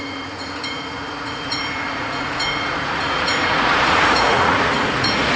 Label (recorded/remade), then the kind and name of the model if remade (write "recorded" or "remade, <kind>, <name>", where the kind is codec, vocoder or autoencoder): remade, vocoder, Vocos